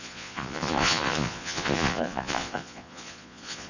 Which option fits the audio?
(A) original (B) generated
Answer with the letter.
B